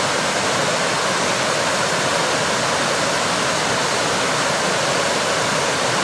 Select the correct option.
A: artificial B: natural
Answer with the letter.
B